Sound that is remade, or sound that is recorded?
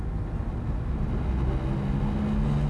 recorded